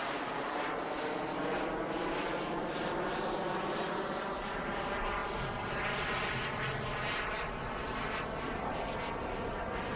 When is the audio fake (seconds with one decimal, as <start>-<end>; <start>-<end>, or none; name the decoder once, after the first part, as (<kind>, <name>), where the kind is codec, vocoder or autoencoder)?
none